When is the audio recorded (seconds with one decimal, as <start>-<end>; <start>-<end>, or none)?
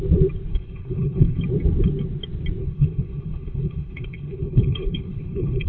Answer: 0.0-0.5; 1.4-2.6